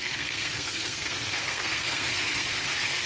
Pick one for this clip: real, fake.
fake